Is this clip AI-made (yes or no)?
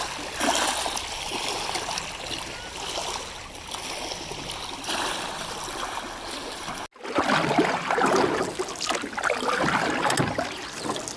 no